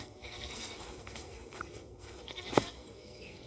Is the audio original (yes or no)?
no